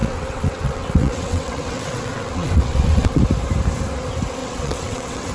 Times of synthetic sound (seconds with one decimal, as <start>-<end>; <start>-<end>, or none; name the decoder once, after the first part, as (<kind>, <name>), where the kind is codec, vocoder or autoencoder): 0.0-3.2 (vocoder, WaveNeXt); 4.4-5.3